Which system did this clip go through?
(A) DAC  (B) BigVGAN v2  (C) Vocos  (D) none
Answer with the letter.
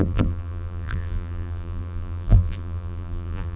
B